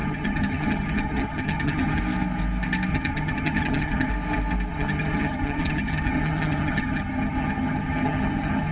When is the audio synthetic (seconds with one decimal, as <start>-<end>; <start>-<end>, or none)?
0.0-2.0; 2.9-4.1; 4.7-8.7